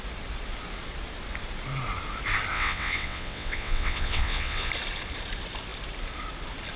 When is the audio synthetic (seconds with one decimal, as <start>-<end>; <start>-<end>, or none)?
2.5-4.7